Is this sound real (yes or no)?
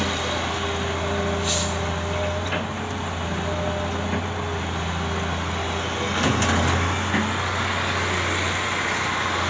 yes